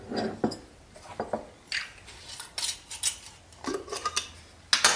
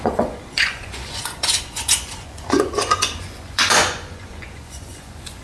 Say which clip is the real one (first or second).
first